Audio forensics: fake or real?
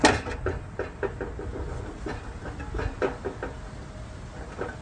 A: real